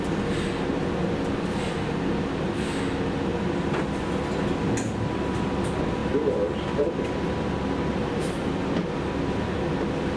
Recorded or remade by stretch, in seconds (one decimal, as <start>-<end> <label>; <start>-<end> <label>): 0.0-3.3 recorded; 3.3-4.0 remade; 4.0-10.2 recorded